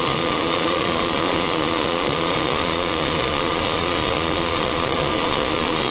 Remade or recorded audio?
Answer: remade